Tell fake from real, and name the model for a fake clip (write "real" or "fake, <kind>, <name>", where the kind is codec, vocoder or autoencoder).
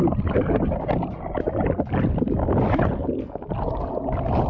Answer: real